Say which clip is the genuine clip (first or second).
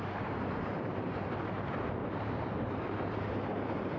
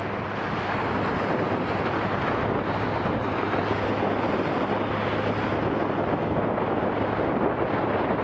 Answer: second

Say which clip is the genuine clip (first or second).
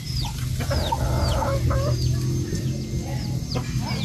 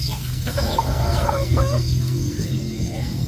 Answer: first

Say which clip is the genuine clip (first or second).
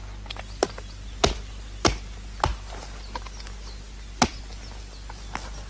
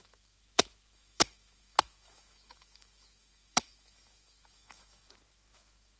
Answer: first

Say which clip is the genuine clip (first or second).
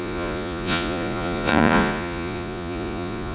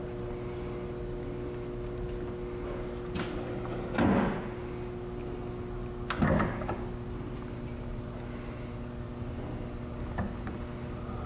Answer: second